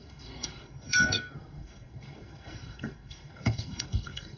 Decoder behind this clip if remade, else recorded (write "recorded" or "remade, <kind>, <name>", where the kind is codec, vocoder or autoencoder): remade, codec, SNAC